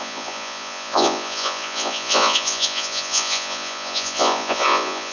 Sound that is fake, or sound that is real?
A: fake